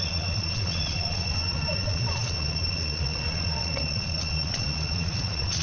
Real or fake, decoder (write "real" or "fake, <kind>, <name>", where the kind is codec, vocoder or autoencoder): fake, vocoder, Vocos